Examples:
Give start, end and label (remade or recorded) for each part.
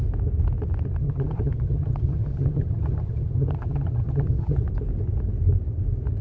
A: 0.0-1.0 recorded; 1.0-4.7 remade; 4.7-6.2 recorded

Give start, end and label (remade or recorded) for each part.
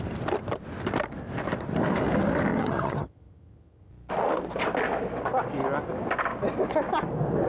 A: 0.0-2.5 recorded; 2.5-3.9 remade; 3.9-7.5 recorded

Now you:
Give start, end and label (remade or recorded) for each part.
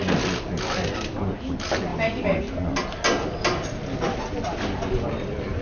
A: 0.0-5.6 recorded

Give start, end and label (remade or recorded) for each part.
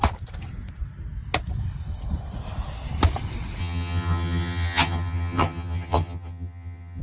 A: 0.0-3.6 recorded; 3.6-7.0 remade